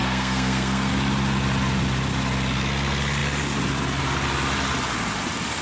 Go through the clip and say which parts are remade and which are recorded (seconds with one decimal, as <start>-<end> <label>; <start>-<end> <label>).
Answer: 0.0-0.9 remade; 0.9-5.6 recorded